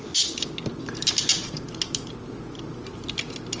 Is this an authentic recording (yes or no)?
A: yes